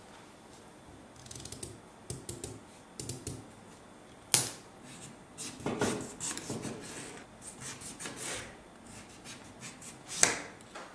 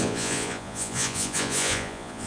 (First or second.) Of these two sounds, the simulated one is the second